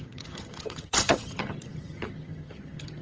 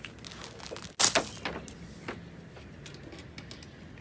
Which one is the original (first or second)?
second